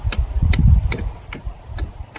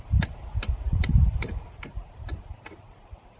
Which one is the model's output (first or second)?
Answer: second